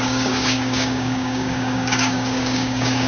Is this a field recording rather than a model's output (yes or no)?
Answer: no